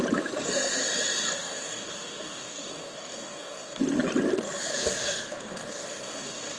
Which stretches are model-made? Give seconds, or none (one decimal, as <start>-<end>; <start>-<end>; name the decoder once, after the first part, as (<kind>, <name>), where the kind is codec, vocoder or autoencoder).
1.4-3.8 (codec, DAC); 4.7-6.6